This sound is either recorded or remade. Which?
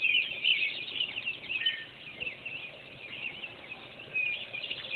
recorded